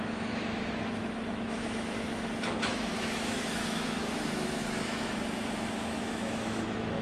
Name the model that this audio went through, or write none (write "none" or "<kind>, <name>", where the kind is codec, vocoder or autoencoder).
autoencoder, DAC-VAE